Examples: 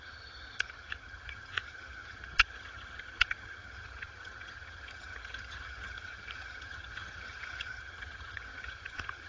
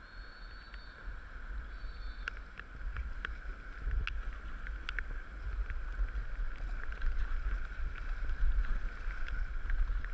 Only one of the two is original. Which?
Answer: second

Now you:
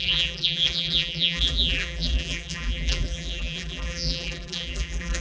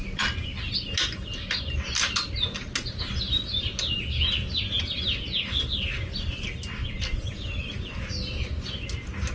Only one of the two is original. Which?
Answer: second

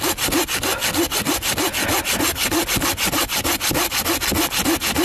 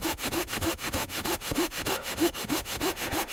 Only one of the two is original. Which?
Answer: first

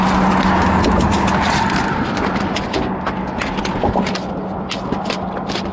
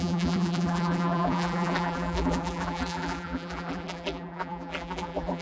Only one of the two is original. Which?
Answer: first